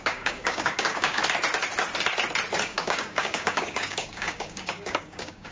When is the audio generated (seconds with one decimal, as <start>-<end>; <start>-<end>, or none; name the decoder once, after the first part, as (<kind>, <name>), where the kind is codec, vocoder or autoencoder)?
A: 0.0-1.2 (codec, DAC); 2.6-5.5